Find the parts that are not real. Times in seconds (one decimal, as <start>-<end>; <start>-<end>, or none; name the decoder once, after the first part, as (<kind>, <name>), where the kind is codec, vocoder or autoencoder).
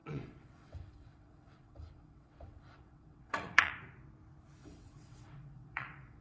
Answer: 0.0-3.7 (vocoder, WaveNeXt); 4.6-6.2